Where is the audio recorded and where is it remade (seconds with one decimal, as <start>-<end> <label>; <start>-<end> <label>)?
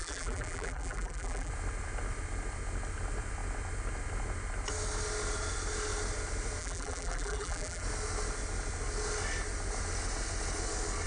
0.0-1.5 remade; 1.5-6.6 recorded; 6.6-7.8 remade; 7.8-11.1 recorded